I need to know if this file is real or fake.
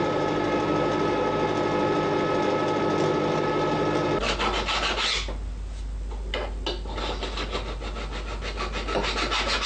real